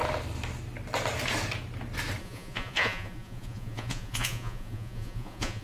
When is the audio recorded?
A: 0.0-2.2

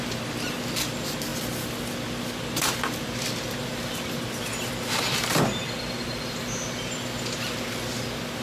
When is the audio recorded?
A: 0.0-8.4